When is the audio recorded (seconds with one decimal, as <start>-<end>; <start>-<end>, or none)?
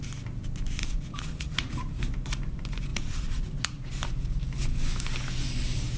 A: 0.0-0.8; 2.0-2.9; 3.9-6.0